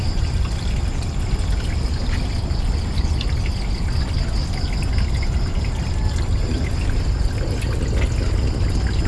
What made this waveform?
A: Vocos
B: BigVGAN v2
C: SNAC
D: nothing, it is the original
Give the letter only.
D